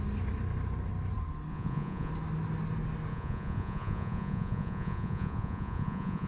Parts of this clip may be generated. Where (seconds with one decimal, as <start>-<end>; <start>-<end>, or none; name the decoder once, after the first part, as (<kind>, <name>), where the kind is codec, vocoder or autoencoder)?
1.5-2.1 (vocoder, Vocos); 3.1-6.3